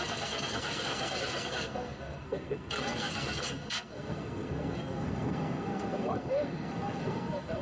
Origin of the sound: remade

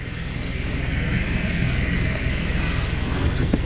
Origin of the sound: remade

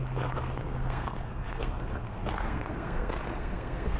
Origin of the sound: remade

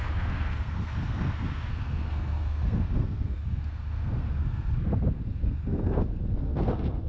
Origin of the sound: remade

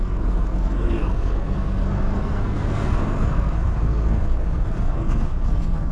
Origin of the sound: remade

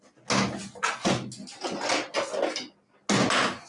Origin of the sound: recorded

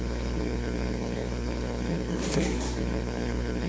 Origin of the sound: remade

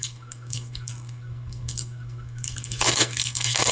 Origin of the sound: remade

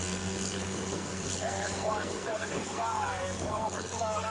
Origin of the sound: remade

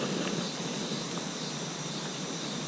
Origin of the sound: recorded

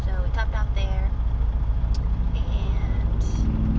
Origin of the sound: recorded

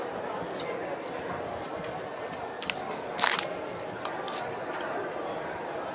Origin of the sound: recorded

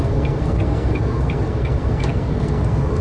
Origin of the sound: remade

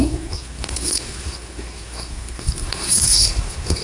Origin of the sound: remade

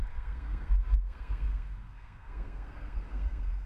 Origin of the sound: remade